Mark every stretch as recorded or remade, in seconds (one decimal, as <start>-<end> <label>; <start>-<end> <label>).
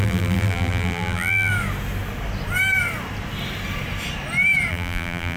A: 0.0-1.5 remade; 1.5-4.7 recorded; 4.7-5.4 remade